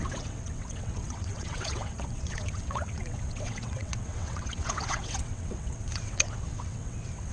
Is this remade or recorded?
remade